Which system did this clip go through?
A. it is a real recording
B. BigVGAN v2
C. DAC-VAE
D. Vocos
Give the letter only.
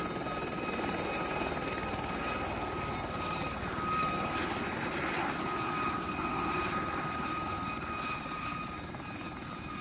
A